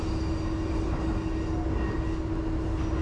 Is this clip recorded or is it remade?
recorded